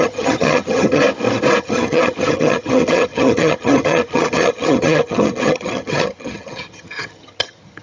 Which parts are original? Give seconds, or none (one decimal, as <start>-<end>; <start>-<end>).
1.0-1.6